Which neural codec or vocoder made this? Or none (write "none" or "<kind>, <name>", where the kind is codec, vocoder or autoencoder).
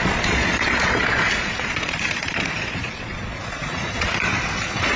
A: vocoder, Vocos